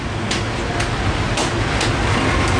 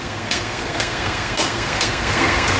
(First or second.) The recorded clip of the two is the first